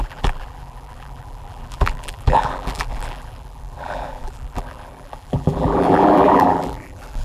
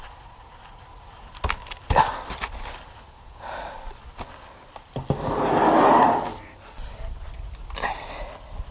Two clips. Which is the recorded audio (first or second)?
second